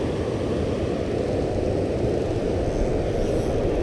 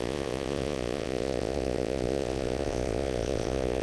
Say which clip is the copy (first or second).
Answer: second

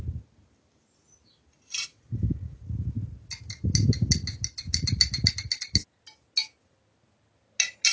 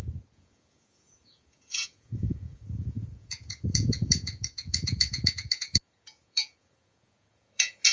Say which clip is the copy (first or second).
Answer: second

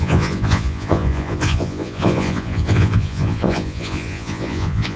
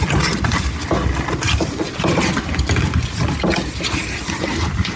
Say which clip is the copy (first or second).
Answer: first